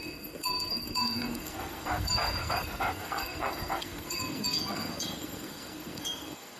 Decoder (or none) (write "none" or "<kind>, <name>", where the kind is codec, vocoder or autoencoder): codec, SNAC